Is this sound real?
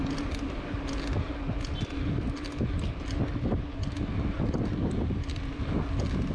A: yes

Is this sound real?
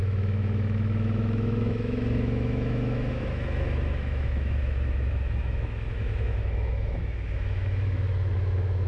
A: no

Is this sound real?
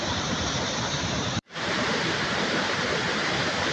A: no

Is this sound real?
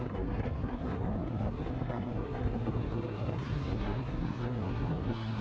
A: no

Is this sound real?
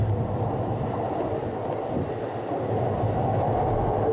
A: yes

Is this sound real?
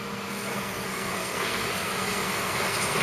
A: no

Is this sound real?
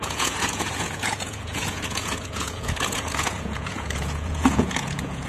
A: no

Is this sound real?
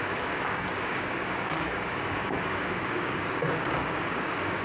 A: no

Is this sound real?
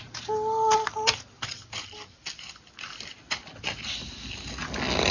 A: yes